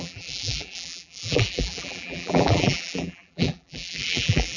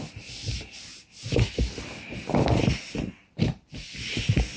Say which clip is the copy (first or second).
first